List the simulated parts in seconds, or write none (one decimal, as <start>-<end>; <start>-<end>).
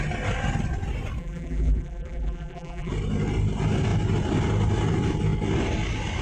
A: 1.2-2.9